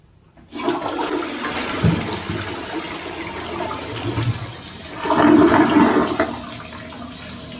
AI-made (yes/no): no